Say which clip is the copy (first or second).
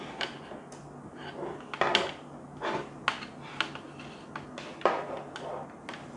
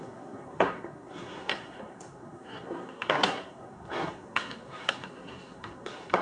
second